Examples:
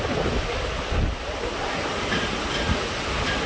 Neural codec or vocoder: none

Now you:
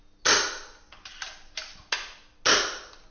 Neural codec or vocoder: none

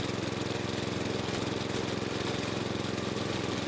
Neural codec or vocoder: none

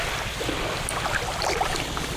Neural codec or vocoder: none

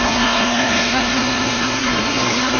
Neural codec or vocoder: codec, SNAC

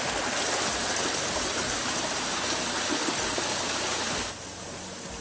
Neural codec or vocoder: none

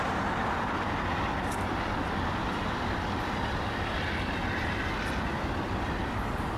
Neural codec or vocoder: none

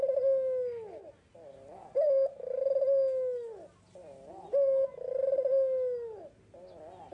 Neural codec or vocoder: none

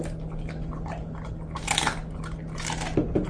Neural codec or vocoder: none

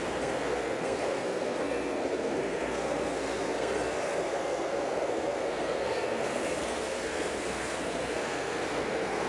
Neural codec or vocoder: codec, SNAC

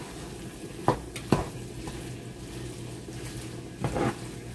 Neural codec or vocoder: none